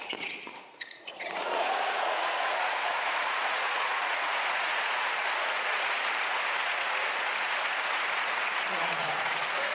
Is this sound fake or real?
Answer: fake